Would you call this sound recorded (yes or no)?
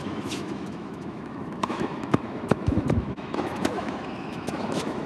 no